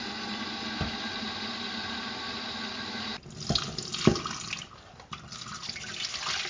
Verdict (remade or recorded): recorded